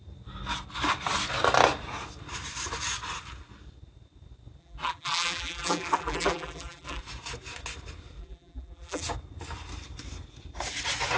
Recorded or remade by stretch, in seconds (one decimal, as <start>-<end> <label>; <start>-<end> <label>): 0.0-4.6 recorded; 4.6-7.0 remade; 7.0-8.2 recorded; 8.2-9.0 remade; 9.0-11.2 recorded